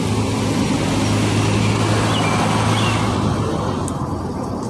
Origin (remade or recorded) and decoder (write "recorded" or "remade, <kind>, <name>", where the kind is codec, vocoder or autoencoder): recorded